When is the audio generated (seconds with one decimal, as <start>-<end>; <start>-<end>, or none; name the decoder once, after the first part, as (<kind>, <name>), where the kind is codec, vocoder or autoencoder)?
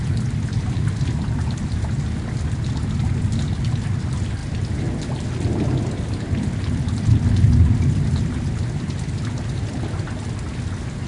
none